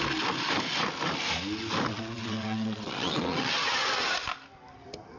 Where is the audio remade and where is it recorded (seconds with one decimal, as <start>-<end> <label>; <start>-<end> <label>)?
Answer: 0.0-1.9 recorded; 1.9-3.5 remade; 3.5-5.2 recorded